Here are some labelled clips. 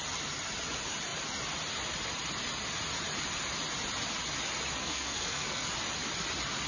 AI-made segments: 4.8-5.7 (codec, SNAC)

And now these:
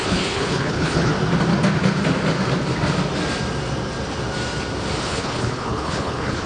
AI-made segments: 0.0-1.1 (codec, HILCodec); 5.0-6.5

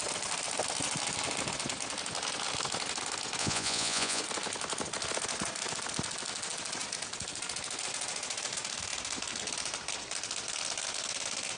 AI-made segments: 3.4-4.2 (vocoder, Vocos)

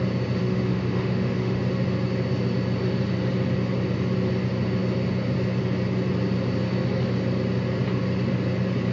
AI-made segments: 0.4-1.6 (autoencoder, DAC-VAE)

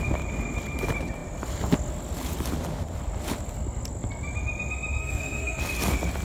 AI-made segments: 5.0-5.6 (codec, SNAC)

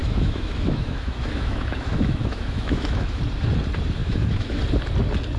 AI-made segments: 0.0-3.2 (autoencoder, DAC-VAE); 4.0-4.6